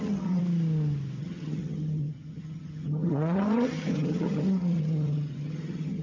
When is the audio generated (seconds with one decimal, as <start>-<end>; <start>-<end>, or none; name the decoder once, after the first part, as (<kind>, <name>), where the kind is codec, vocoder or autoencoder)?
0.0-0.4 (vocoder, HiFi-GAN); 1.2-6.0